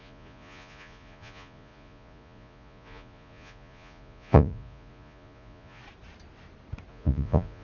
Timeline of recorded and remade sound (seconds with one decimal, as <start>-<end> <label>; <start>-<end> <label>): 0.0-5.8 remade; 5.8-6.9 recorded; 6.9-7.6 remade

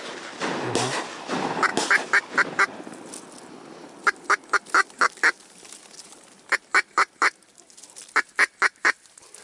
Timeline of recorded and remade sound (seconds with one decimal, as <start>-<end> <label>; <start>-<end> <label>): 0.0-9.4 recorded

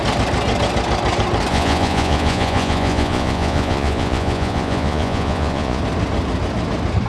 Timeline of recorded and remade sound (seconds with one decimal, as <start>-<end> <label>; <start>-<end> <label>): 0.0-1.5 recorded; 1.5-5.8 remade; 5.8-7.1 recorded

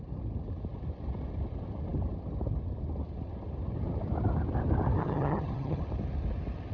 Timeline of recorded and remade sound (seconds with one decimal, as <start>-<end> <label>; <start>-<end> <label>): 0.0-5.0 recorded; 5.0-5.8 remade; 5.8-6.7 recorded